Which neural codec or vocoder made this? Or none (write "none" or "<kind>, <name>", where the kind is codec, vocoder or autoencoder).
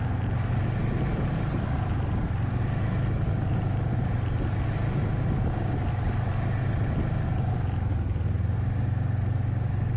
none